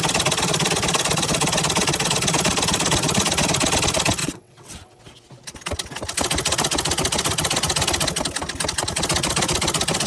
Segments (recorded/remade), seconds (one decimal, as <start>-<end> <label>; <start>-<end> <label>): 0.0-4.2 recorded; 4.2-5.0 remade; 5.0-10.1 recorded